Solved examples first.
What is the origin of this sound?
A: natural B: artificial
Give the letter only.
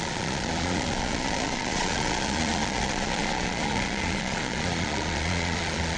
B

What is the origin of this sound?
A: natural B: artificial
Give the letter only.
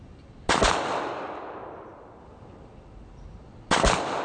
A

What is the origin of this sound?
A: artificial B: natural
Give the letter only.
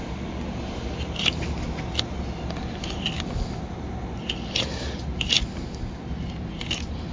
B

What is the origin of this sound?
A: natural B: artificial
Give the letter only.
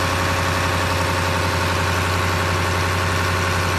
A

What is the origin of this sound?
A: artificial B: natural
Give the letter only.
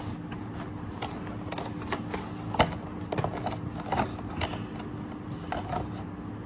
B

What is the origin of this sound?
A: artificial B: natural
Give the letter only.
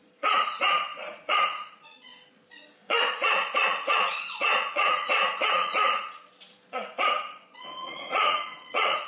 A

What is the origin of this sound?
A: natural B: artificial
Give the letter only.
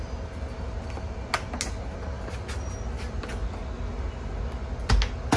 A